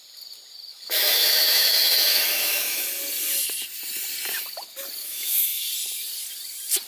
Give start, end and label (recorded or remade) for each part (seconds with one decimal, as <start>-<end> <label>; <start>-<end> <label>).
0.0-0.7 recorded; 0.7-2.9 remade; 2.9-5.0 recorded; 5.0-5.7 remade; 5.7-6.9 recorded